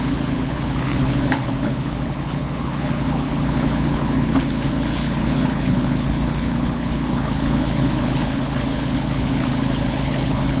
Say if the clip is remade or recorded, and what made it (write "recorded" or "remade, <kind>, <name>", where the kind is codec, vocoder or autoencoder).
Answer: remade, codec, HILCodec